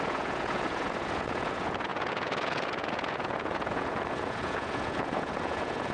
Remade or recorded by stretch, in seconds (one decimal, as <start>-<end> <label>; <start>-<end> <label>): 0.0-5.9 remade